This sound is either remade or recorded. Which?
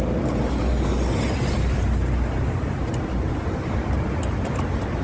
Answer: recorded